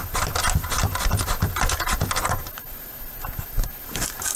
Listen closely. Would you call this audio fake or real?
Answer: real